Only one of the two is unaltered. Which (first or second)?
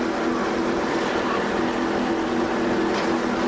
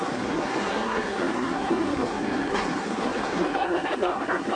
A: first